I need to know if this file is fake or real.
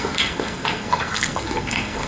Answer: fake